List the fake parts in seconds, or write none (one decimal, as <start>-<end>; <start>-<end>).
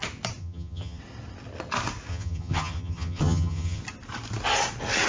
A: 0.4-1.0; 2.1-3.8